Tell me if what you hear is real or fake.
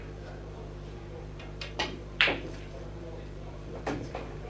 fake